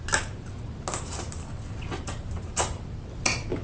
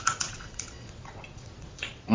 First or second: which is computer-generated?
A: second